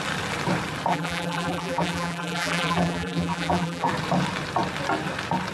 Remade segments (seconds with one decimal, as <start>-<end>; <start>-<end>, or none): 0.9-3.9